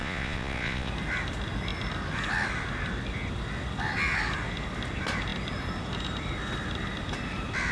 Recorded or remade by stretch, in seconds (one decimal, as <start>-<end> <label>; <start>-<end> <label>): 0.0-0.9 remade; 0.9-7.7 recorded